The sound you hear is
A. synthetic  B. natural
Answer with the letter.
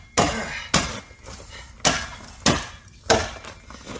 B